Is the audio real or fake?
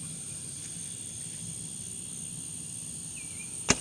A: real